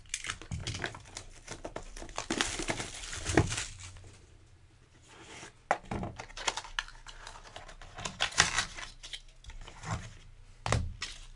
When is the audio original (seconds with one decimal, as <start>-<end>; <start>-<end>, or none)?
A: 0.0-0.6; 4.4-11.4